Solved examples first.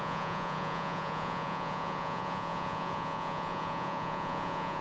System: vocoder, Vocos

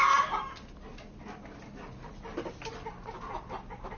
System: none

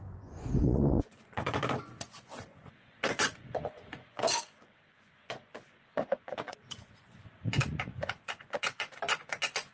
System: vocoder, Vocos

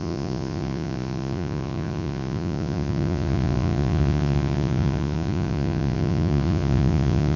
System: vocoder, Vocos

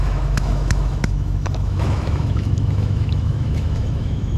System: autoencoder, DAC-VAE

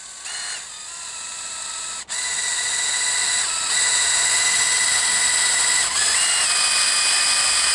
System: none